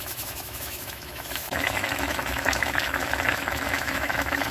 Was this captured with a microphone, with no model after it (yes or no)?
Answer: no